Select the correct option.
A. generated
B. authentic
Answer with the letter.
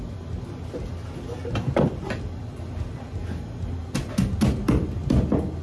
B